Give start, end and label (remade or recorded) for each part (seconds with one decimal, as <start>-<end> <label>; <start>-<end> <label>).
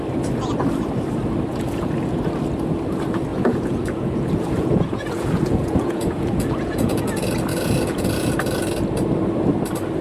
0.0-1.5 recorded; 1.5-2.2 remade; 2.2-3.3 recorded; 3.3-7.0 remade; 7.0-7.5 recorded; 7.5-8.3 remade; 8.3-10.0 recorded